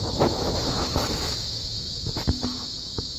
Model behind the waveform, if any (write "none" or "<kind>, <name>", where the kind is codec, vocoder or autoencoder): autoencoder, DAC-VAE